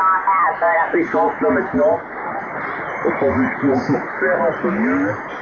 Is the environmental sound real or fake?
real